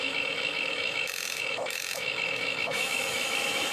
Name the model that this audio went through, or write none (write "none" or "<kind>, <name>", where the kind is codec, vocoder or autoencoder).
autoencoder, DAC-VAE